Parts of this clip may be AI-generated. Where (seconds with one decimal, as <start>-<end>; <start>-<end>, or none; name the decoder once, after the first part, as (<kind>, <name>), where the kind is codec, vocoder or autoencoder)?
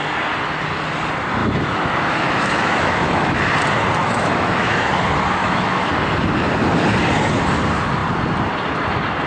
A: 1.4-3.4 (autoencoder, DAC-VAE); 4.0-4.9; 5.4-5.9